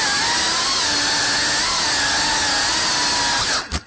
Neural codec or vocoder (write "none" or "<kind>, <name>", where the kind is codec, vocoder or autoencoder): none